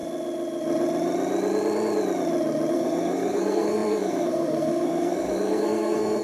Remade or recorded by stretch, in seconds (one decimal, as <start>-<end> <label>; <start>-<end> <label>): 0.0-2.7 recorded; 2.7-6.2 remade